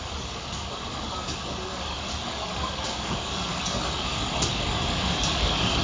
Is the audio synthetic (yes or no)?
yes